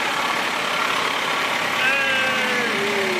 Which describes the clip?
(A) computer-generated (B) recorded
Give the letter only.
B